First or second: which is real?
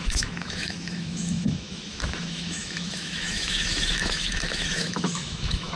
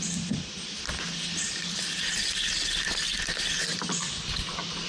second